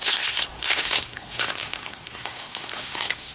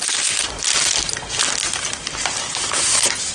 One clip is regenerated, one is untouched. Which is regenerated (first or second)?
first